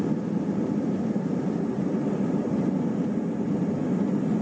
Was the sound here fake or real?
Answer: real